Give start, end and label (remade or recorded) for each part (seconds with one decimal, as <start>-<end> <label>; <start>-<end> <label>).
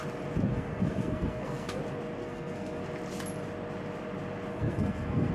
0.0-0.5 recorded; 0.5-1.8 remade; 1.8-2.2 recorded; 2.2-2.8 remade; 2.8-4.5 recorded; 4.5-5.3 remade